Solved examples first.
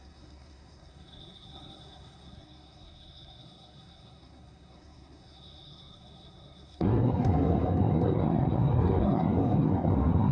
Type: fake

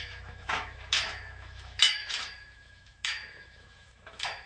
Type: fake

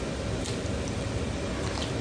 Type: real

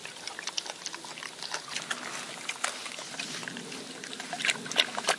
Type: real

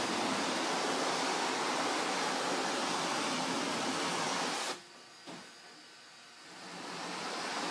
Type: real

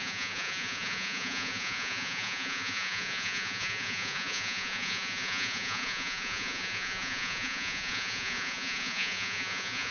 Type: fake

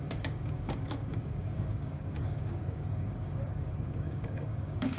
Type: fake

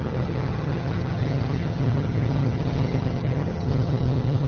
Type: fake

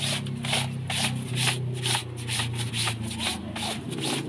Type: real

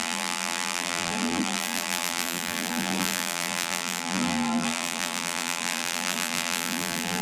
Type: fake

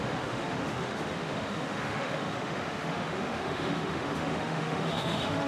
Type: fake